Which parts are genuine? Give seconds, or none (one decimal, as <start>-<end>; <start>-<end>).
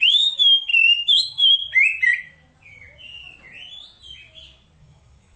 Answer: 1.6-4.8